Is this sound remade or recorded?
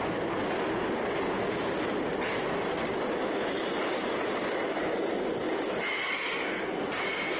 recorded